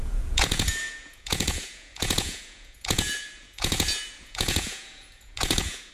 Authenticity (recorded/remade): remade